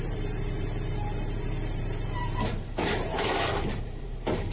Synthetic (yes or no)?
yes